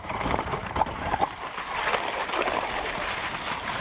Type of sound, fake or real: real